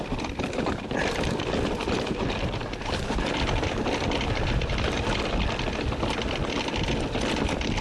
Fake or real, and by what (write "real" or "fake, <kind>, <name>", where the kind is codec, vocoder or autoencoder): real